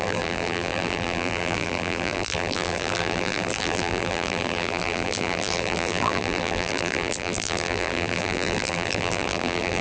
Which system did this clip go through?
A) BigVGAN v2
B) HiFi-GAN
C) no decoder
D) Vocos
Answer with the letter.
A